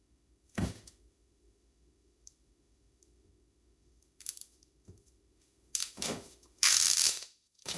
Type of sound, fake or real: fake